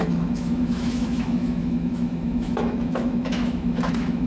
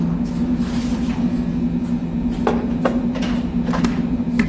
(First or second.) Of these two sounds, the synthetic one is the first